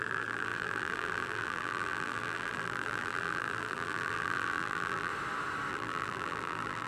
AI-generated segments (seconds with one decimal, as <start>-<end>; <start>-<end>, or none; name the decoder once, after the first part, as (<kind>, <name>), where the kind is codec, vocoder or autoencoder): 0.0-5.1 (vocoder, BigVGAN v2); 5.7-6.9